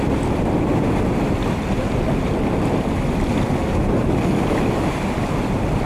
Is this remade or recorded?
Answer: recorded